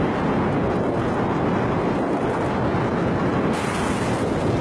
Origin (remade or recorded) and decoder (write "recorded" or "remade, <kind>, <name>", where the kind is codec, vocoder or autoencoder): recorded